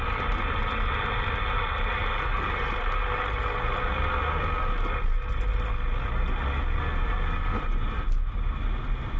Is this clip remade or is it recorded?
recorded